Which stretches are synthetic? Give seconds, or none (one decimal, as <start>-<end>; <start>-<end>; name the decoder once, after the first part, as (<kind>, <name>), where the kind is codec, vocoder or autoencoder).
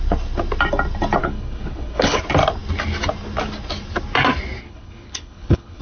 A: 1.2-2.2 (codec, HILCodec); 4.6-5.8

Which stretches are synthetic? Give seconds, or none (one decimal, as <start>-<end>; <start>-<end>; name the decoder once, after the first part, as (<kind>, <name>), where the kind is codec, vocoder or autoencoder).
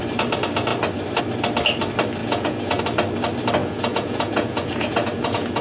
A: 2.2-2.8 (vocoder, Vocos); 3.6-5.6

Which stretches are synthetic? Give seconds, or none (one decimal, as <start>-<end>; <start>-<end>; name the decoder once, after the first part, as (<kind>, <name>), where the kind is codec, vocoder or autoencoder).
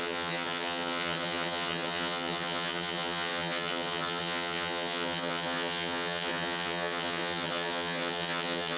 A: 0.0-8.8 (vocoder, HiFi-GAN)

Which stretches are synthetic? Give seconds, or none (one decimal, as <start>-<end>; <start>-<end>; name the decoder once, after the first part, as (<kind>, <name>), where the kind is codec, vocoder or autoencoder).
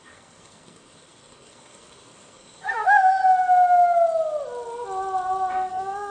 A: 0.0-3.2 (codec, SNAC); 5.5-6.1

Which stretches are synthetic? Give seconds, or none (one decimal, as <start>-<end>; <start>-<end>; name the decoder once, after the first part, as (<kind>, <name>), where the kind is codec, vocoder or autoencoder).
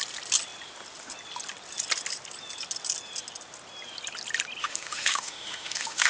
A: 4.6-6.1 (autoencoder, DAC-VAE)